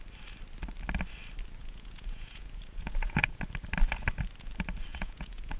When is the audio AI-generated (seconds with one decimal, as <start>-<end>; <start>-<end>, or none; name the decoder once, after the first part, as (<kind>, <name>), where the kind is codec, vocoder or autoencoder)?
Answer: 1.6-3.4 (vocoder, Vocos); 4.9-5.6